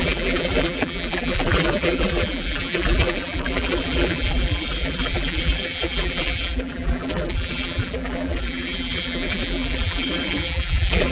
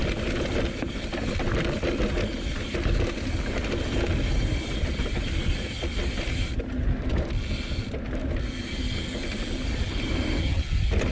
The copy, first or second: first